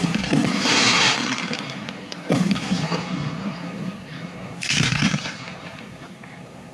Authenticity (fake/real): fake